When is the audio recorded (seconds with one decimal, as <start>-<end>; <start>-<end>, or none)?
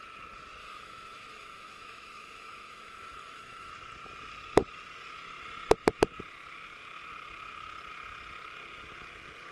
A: 0.0-0.6; 3.7-9.5